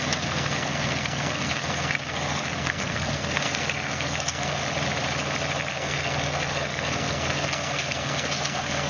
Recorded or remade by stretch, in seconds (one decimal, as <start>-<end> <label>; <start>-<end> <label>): 0.0-4.6 remade; 4.6-5.7 recorded; 5.7-8.9 remade